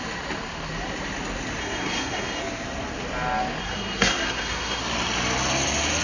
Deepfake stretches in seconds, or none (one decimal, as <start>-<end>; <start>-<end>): 1.6-2.4; 3.6-4.8